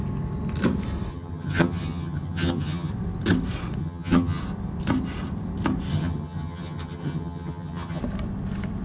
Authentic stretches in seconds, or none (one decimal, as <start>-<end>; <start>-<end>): 0.0-1.1; 2.9-3.8; 4.4-5.9; 8.0-8.8